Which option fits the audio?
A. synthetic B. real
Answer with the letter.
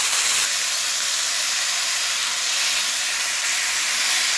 B